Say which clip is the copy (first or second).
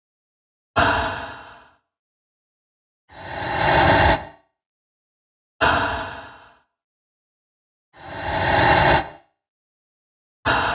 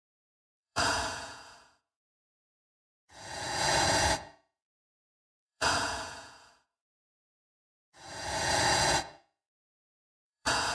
second